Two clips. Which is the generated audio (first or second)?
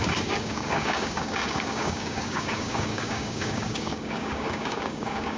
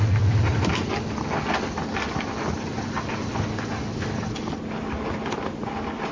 first